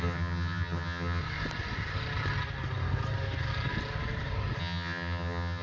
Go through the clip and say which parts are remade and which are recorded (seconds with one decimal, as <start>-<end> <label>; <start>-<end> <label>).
0.0-1.2 remade; 1.2-4.6 recorded; 4.6-5.6 remade